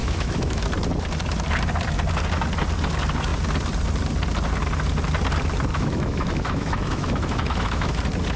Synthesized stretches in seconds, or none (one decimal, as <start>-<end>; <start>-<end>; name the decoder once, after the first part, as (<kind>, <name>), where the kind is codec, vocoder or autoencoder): 0.0-0.6 (autoencoder, DAC-VAE); 5.7-8.0